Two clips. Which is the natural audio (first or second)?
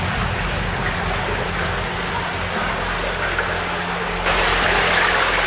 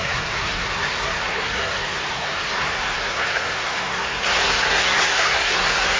first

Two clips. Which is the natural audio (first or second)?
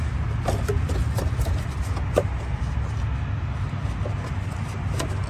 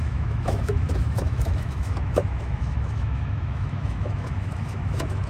first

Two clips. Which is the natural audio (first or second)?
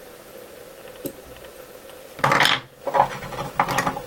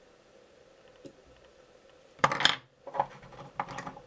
first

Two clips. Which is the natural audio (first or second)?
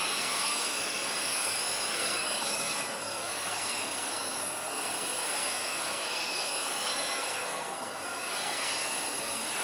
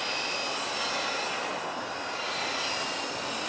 second